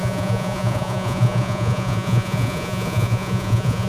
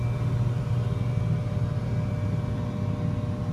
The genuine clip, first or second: second